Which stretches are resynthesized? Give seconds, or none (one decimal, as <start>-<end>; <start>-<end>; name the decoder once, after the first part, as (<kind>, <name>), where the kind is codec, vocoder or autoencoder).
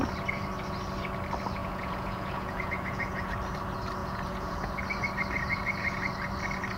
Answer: 1.6-3.3 (vocoder, Vocos); 4.0-4.7